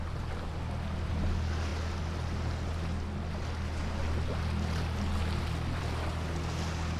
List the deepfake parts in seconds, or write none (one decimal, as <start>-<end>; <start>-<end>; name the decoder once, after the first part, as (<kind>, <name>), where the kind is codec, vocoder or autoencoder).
none